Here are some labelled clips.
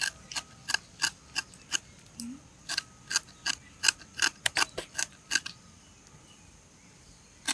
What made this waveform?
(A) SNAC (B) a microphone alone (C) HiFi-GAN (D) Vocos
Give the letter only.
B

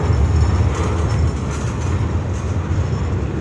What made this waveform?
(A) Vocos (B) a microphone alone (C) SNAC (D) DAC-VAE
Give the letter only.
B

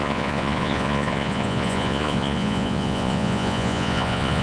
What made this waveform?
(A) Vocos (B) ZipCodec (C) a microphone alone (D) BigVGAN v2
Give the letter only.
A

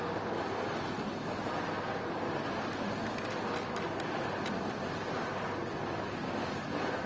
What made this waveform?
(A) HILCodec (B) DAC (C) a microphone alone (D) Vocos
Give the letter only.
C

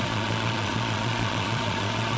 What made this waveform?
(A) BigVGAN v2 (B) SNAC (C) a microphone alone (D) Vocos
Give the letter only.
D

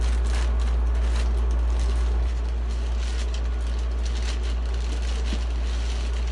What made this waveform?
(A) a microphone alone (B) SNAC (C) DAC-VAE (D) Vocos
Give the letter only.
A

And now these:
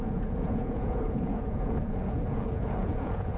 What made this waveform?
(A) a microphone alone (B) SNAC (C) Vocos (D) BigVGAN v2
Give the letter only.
C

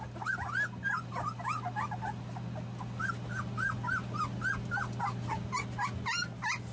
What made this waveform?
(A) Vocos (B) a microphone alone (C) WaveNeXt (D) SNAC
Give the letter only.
B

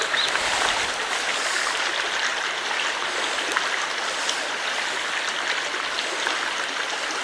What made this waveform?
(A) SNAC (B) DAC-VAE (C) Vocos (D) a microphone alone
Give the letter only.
D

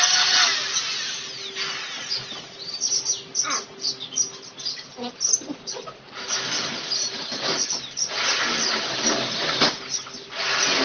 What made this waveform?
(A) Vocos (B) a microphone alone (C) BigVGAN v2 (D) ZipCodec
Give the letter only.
B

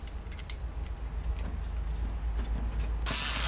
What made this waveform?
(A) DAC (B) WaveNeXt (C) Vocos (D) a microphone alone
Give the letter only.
D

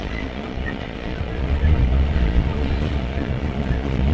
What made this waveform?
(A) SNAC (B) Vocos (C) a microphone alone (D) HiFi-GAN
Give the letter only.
B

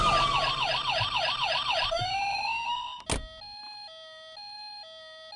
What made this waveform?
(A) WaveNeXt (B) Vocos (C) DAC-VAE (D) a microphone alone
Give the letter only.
D